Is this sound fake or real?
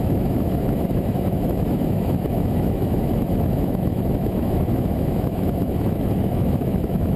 fake